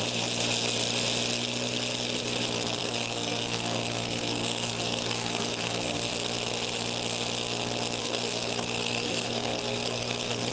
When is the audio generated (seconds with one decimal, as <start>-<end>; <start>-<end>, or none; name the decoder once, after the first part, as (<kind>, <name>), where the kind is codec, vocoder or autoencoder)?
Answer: 2.8-6.1 (codec, SNAC); 8.0-10.5